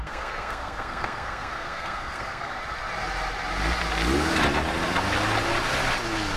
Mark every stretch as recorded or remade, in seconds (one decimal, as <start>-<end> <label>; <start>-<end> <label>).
0.0-2.6 remade; 2.6-6.4 recorded